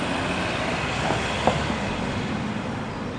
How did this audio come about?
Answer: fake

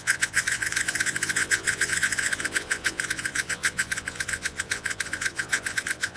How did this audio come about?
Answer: fake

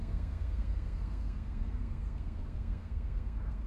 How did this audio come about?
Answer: fake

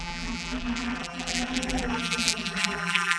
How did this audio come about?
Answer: fake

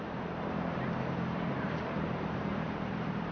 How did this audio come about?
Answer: fake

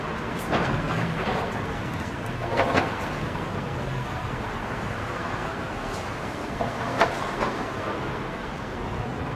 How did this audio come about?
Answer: fake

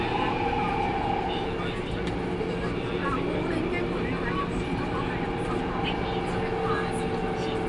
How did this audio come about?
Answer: real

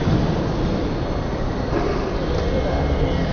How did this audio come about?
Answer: real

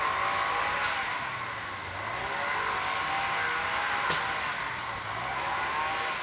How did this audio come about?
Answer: real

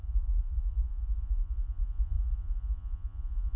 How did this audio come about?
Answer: fake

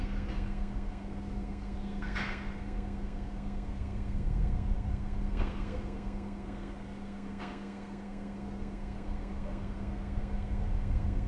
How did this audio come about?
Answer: fake